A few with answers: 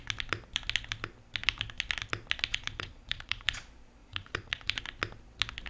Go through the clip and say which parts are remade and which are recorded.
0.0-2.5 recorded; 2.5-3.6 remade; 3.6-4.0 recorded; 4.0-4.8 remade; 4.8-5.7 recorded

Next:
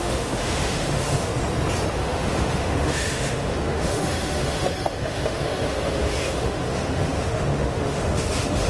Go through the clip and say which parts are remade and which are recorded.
0.0-1.3 remade; 1.3-1.9 recorded; 1.9-8.7 remade